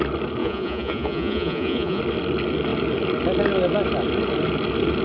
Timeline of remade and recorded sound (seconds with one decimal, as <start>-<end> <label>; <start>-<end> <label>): 0.0-0.4 recorded; 0.4-2.0 remade; 2.0-5.0 recorded

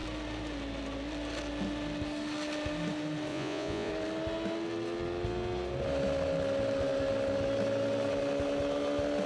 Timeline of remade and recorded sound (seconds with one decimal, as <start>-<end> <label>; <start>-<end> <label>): 0.0-3.3 recorded; 3.3-3.9 remade; 3.9-9.3 recorded